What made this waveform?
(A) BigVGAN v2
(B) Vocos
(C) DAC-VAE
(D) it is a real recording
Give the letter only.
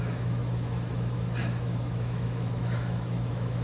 C